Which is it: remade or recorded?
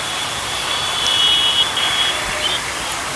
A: recorded